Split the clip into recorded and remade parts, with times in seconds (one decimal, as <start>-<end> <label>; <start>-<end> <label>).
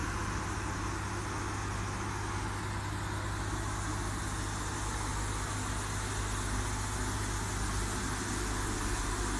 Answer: 0.0-9.4 recorded